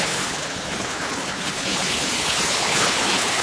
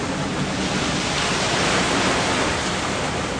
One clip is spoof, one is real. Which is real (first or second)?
second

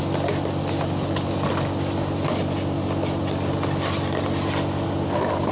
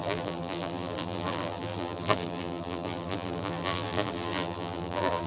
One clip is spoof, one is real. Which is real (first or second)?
first